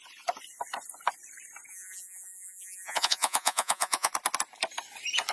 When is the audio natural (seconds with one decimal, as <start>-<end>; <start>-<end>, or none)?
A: 0.0-1.7; 4.1-5.3